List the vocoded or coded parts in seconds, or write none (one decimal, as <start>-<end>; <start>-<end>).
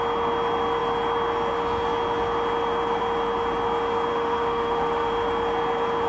4.1-5.1